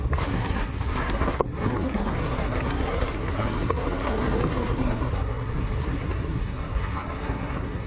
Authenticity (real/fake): fake